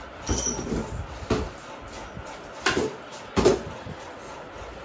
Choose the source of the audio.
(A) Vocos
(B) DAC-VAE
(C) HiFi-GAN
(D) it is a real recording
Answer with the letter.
D